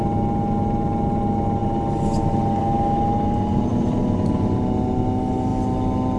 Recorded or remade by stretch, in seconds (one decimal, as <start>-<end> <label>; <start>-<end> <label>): 0.0-3.7 recorded; 3.7-4.3 remade; 4.3-6.2 recorded